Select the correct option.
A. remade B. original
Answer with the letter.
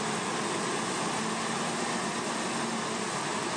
B